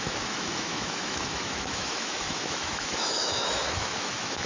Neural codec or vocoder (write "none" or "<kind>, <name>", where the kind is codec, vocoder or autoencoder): autoencoder, DAC-VAE